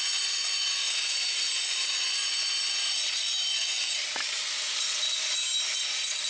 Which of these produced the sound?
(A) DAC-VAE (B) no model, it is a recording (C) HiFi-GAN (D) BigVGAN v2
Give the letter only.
B